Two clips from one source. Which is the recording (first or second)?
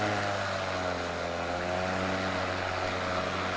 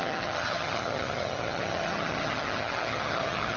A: first